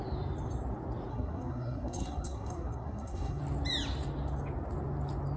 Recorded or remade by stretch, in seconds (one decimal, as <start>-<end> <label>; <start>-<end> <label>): 0.0-1.1 recorded; 1.1-3.4 remade; 3.4-5.4 recorded